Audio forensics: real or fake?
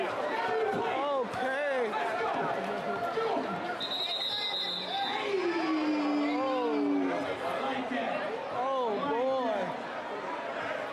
real